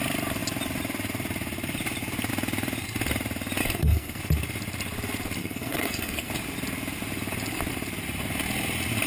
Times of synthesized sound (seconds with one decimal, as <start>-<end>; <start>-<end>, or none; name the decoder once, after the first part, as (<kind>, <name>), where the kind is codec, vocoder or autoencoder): 3.6-4.2 (codec, SNAC); 5.4-6.3